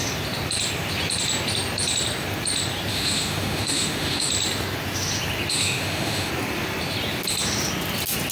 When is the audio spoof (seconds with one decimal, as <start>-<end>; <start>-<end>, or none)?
2.9-4.3; 5.5-6.3